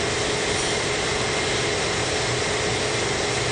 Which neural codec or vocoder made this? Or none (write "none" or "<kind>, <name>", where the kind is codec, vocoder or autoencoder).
none